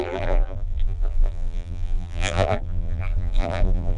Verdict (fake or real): fake